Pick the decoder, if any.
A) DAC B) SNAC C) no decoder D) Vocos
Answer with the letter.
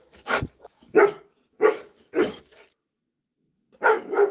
A